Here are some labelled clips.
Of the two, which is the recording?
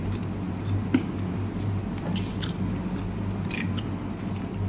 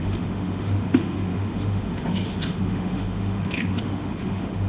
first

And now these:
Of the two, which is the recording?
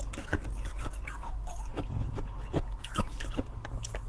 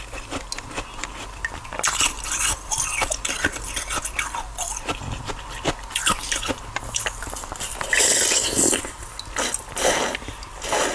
second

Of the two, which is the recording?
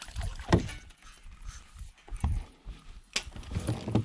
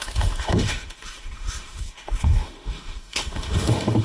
first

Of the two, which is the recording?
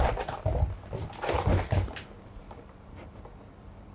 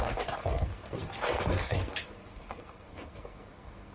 first